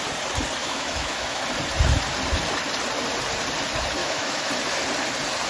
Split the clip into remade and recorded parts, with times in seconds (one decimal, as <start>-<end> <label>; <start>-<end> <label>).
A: 0.0-0.6 recorded; 0.6-1.4 remade; 1.4-4.0 recorded; 4.0-4.5 remade; 4.5-5.5 recorded

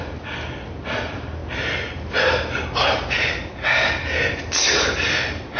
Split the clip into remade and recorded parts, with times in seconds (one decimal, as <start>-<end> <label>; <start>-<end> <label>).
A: 0.0-5.6 recorded